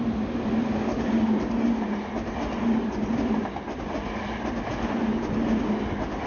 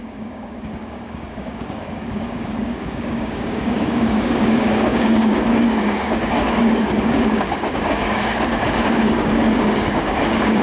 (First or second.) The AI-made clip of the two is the second